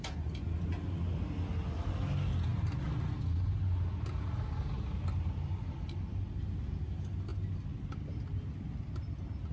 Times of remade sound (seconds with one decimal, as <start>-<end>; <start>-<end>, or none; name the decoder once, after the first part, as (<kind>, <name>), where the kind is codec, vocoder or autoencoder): none